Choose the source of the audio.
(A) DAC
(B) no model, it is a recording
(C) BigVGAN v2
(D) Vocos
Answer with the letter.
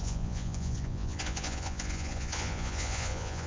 D